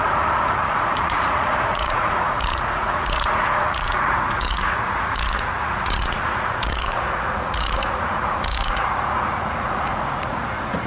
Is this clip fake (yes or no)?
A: yes